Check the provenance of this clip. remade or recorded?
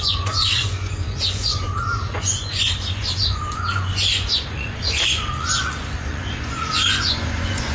remade